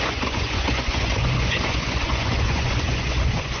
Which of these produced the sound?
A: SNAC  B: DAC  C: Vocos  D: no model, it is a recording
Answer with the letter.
C